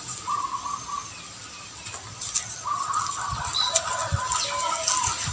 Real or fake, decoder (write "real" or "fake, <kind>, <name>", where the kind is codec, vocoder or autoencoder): real